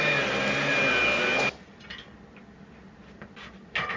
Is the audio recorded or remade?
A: recorded